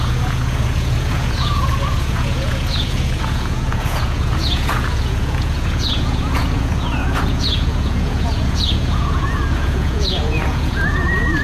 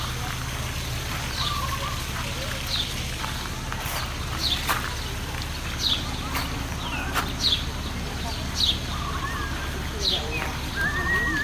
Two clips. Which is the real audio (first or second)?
second